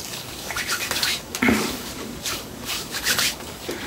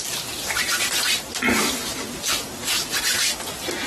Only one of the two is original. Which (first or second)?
second